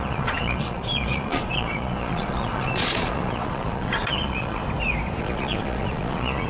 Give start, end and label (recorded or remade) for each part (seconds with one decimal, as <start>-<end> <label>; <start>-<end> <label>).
0.0-4.6 remade; 4.6-5.2 recorded; 5.2-6.5 remade